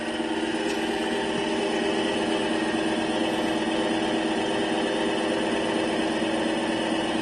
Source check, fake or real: real